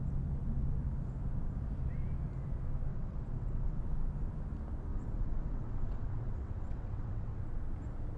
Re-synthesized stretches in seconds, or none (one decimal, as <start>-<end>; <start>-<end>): 2.9-3.8; 4.9-7.4